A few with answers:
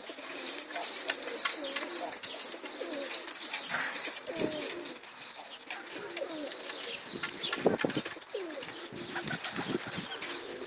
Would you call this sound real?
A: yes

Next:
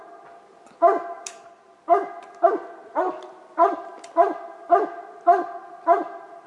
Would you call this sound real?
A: yes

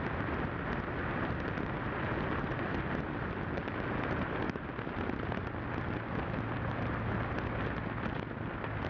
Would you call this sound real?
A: yes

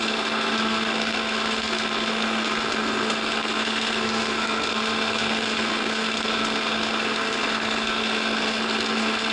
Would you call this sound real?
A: no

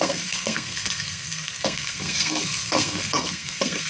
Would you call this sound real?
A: no